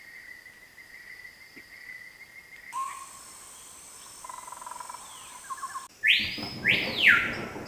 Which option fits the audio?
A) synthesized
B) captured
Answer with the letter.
B